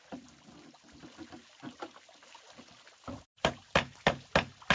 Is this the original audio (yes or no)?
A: yes